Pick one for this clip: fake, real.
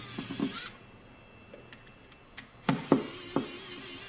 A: real